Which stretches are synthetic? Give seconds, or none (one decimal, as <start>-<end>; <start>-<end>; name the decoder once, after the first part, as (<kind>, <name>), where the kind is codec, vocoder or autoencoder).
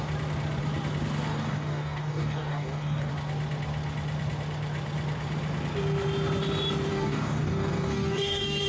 1.3-3.1 (codec, DAC); 6.9-8.7